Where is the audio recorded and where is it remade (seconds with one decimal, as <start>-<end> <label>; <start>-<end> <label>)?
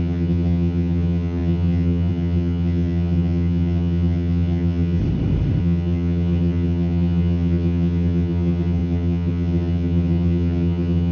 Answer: 0.0-5.0 remade; 5.0-5.6 recorded; 5.6-11.1 remade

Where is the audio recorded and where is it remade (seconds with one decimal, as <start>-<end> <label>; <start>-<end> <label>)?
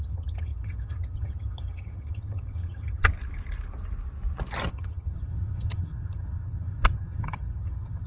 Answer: 0.0-3.1 remade; 3.1-4.7 recorded; 4.7-8.1 remade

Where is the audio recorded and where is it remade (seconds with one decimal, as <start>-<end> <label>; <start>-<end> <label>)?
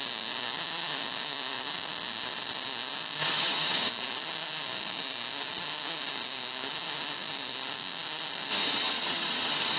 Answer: 0.0-3.2 recorded; 3.2-3.9 remade; 3.9-8.5 recorded; 8.5-9.8 remade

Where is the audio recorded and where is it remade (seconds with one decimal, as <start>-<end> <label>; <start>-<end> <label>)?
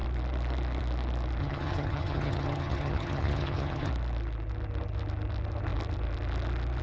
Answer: 0.0-1.4 recorded; 1.4-3.9 remade; 3.9-6.8 recorded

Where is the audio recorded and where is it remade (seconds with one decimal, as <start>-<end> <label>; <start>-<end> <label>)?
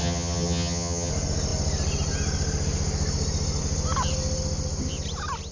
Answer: 0.0-1.1 remade; 1.1-5.5 recorded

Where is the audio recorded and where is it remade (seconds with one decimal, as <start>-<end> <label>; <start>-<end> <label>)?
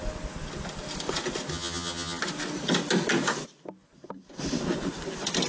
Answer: 0.0-1.5 recorded; 1.5-2.2 remade; 2.2-5.5 recorded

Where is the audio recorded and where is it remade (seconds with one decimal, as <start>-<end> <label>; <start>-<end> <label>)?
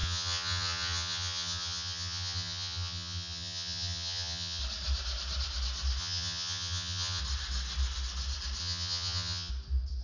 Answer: 0.0-4.6 remade; 4.6-6.0 recorded; 6.0-7.2 remade; 7.2-8.6 recorded; 8.6-9.5 remade; 9.5-10.0 recorded